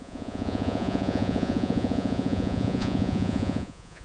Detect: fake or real fake